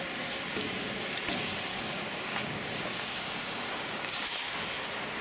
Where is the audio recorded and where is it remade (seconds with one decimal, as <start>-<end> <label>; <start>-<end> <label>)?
0.0-1.7 recorded; 1.7-4.8 remade; 4.8-5.2 recorded